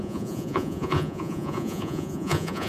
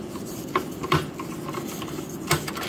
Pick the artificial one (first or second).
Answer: first